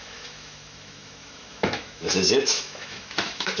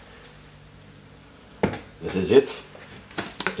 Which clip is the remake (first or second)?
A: first